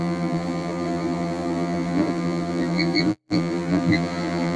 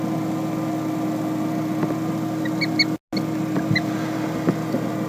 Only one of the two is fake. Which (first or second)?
first